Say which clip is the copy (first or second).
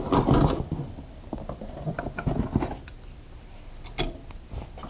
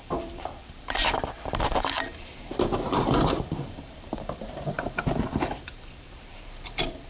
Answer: second